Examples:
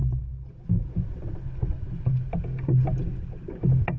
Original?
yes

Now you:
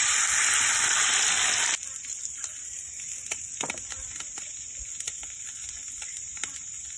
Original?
yes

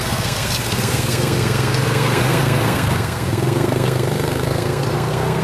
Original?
no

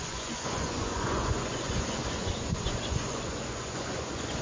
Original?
no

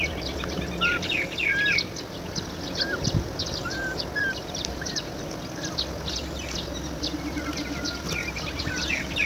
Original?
yes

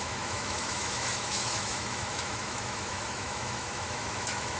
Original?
no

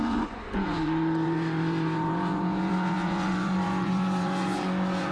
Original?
no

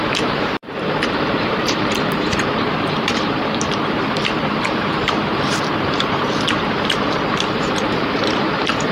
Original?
no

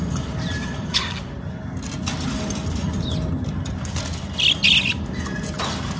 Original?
yes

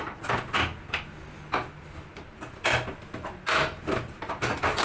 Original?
yes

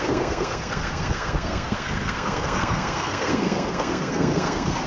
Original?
no